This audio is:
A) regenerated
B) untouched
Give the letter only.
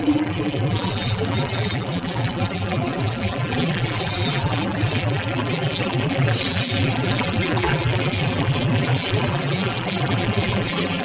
A